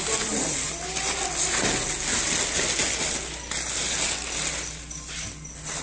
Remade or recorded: recorded